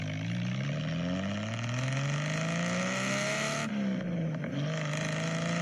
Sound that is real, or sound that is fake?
real